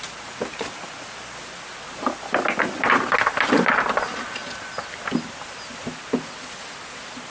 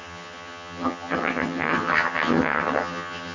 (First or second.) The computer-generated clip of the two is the second